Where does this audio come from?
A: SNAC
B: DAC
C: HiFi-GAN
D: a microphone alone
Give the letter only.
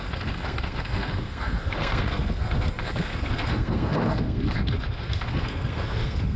A